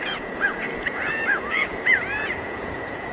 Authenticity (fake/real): fake